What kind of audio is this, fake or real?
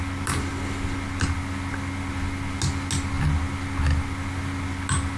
real